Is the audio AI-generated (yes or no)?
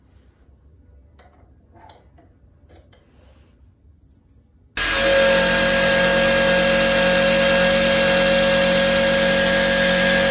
no